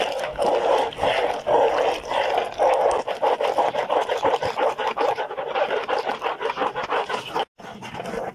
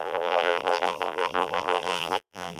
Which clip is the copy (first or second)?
second